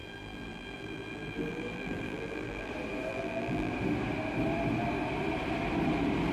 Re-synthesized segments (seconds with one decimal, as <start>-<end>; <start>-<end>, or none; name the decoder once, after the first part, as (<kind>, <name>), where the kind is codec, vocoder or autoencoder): 0.0-2.7 (vocoder, BigVGAN v2); 3.1-3.7